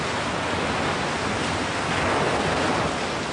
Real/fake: real